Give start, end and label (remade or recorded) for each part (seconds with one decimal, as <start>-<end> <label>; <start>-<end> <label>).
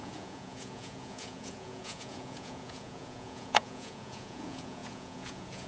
0.0-5.7 remade